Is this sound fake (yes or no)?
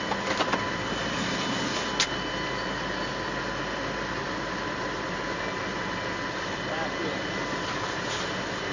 no